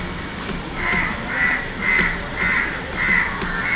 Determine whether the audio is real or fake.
real